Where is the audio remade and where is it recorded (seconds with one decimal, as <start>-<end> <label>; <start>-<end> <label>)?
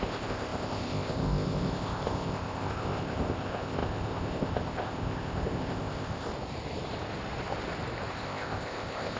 0.0-6.3 remade; 6.3-8.1 recorded; 8.1-9.2 remade